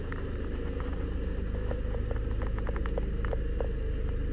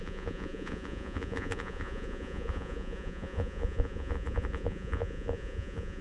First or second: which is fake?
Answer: second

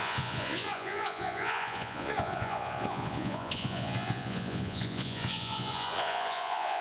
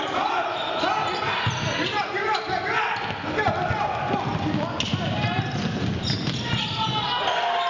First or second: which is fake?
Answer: first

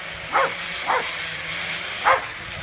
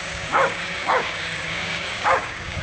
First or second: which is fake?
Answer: second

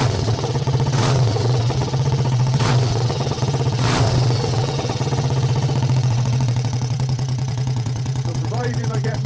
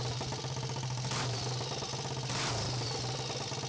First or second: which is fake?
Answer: first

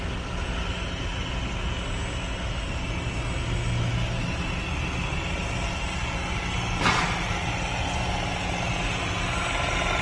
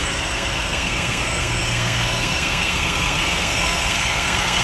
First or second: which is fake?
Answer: second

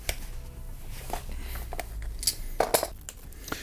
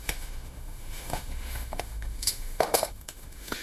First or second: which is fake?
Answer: second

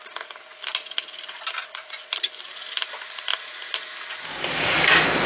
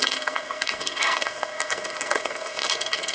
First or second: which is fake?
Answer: second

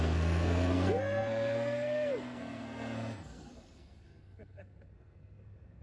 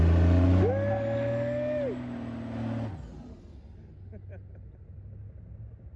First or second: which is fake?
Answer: first